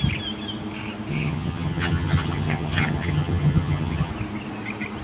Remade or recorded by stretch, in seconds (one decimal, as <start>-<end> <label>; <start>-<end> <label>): 0.0-1.1 recorded; 1.1-4.1 remade; 4.1-5.0 recorded